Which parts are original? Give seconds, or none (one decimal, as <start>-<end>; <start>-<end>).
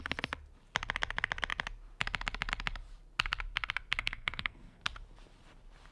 0.0-4.0; 4.8-5.9